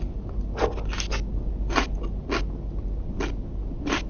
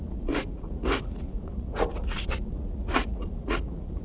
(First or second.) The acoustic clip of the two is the first